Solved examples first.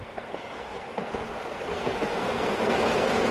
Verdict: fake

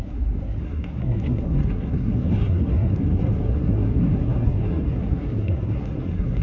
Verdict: fake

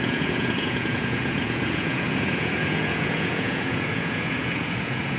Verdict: fake